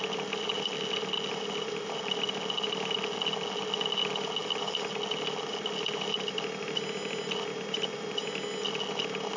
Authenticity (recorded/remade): recorded